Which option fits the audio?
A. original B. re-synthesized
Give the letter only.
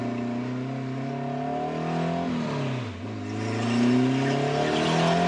A